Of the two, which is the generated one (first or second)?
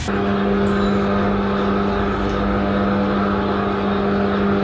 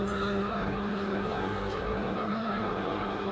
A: second